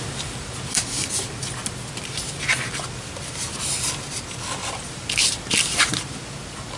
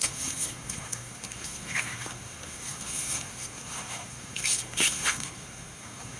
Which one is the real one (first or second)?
first